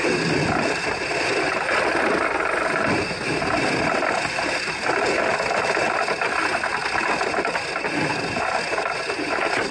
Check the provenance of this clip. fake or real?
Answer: real